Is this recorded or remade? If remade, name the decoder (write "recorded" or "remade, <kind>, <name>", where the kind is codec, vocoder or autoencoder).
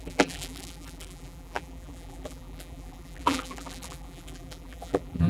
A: remade, vocoder, BigVGAN v2